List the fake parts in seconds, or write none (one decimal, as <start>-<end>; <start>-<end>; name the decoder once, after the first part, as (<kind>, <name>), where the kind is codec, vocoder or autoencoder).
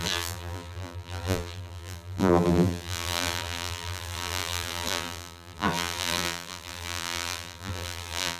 0.0-8.4 (vocoder, BigVGAN v2)